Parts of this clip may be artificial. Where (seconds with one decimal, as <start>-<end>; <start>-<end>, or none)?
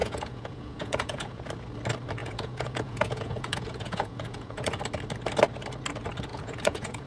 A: 0.0-1.5; 2.2-4.8; 6.3-7.1